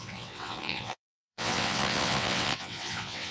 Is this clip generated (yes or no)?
yes